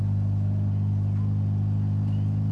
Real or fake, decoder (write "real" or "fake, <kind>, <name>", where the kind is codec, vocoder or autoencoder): real